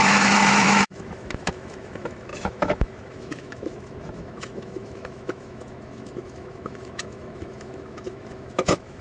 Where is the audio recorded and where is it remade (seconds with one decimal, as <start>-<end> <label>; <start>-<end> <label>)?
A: 0.0-9.0 remade